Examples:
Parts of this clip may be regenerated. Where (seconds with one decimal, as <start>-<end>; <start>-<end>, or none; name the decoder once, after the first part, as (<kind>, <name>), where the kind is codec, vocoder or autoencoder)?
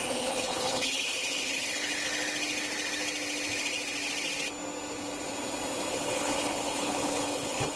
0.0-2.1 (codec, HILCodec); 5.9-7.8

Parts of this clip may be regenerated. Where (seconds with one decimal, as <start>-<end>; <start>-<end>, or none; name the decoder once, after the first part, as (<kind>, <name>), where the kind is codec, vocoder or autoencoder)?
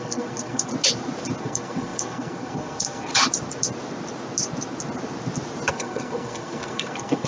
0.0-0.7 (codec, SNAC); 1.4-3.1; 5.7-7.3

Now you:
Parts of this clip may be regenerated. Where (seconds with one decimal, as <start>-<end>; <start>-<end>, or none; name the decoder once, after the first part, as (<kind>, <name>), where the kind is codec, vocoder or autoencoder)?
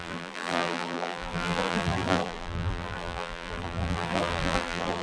0.0-5.0 (vocoder, BigVGAN v2)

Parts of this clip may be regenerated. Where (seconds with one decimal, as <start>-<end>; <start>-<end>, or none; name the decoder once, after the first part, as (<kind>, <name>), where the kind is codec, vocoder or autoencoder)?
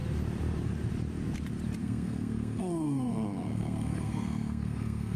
1.8-5.2 (codec, SNAC)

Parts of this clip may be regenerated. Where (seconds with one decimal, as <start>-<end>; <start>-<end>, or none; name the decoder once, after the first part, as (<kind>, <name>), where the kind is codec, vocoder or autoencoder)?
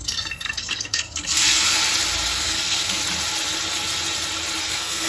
0.0-1.8 (codec, SNAC); 2.4-3.0; 4.6-5.1